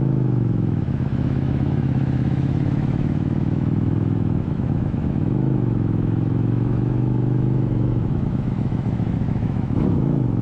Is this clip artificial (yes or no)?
yes